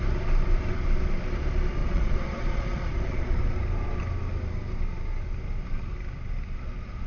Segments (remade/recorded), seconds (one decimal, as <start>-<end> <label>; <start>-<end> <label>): 0.0-1.8 recorded; 1.8-3.6 remade; 3.6-7.1 recorded